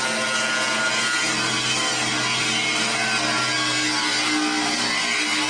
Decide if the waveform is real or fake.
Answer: real